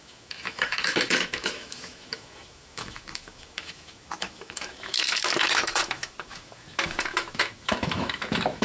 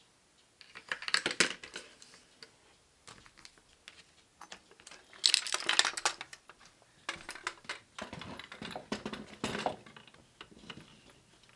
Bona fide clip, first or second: second